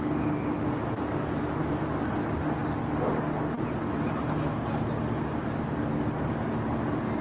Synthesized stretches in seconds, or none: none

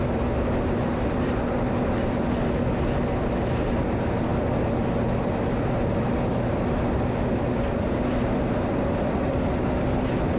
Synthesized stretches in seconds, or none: none

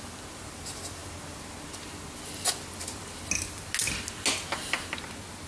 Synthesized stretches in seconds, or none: none

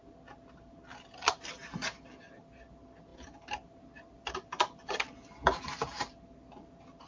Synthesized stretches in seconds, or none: none

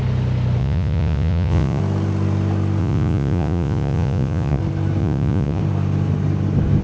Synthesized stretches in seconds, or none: 0.6-1.8 (vocoder, Vocos); 2.8-4.6; 5.0-5.6